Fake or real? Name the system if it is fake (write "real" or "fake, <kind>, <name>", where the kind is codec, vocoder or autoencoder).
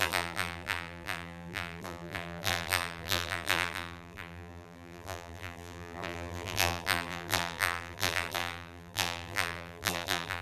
fake, vocoder, BigVGAN v2